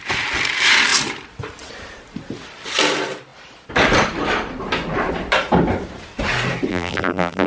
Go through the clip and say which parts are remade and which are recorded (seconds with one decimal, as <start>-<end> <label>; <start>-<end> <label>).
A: 0.0-6.7 recorded; 6.7-7.5 remade